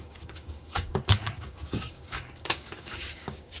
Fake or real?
fake